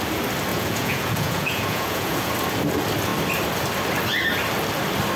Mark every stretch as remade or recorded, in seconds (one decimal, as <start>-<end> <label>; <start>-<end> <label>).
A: 0.0-0.5 recorded; 0.5-2.3 remade; 2.3-5.2 recorded